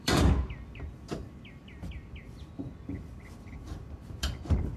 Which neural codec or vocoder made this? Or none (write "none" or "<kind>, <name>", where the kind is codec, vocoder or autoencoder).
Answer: vocoder, BigVGAN v2